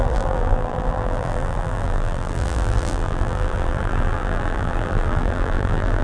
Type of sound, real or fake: fake